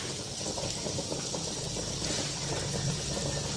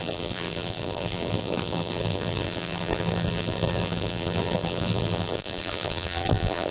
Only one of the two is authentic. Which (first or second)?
first